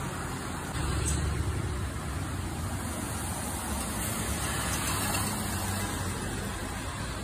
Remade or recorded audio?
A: recorded